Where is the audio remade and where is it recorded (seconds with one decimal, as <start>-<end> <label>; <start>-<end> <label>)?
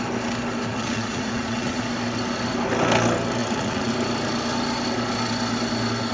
0.0-0.7 recorded; 0.7-1.8 remade; 1.8-3.4 recorded; 3.4-3.9 remade; 3.9-6.1 recorded